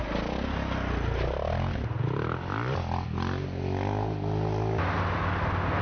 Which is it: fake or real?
real